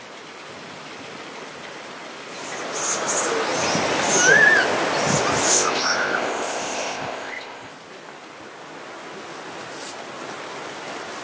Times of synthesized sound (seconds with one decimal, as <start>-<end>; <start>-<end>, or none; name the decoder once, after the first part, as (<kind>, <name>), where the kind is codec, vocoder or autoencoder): 5.5-7.7 (codec, ZipCodec)